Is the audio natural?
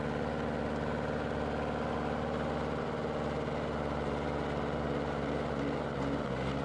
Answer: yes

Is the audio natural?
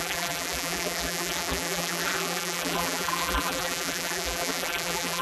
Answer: no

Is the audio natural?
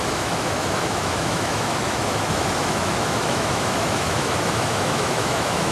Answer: no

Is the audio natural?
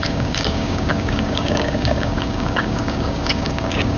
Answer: no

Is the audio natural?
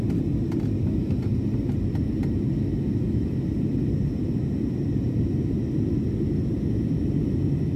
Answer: yes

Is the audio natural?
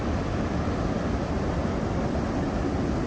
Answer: yes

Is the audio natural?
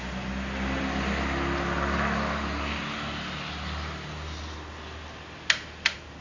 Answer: yes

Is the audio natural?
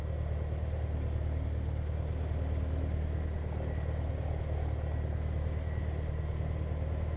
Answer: yes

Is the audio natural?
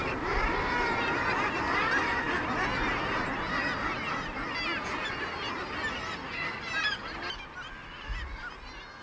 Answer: yes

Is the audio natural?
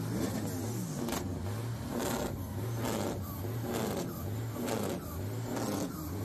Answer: yes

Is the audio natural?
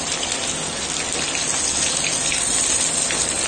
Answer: yes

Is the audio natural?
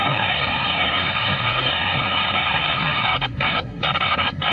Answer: no